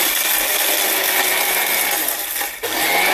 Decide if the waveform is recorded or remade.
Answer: recorded